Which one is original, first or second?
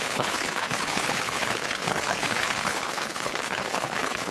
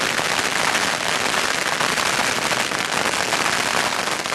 second